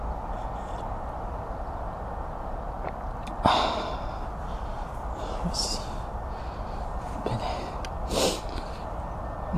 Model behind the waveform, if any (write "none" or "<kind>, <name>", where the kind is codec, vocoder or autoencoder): none